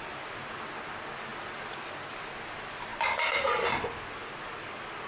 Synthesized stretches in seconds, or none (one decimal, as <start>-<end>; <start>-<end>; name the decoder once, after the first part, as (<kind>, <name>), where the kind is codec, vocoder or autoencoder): none